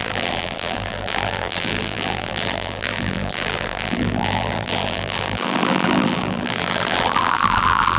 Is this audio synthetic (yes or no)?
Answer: yes